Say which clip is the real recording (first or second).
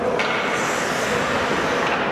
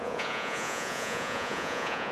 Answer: first